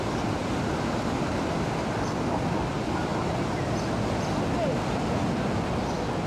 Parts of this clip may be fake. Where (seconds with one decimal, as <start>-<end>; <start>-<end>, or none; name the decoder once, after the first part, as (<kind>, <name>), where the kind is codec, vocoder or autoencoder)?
none